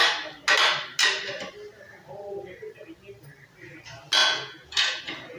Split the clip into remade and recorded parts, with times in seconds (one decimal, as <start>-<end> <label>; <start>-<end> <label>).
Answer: 0.0-4.2 recorded; 4.2-5.0 remade; 5.0-5.4 recorded